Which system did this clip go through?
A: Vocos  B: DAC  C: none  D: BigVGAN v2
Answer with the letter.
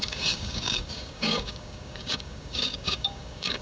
B